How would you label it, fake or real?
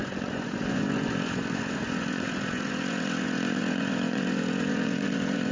fake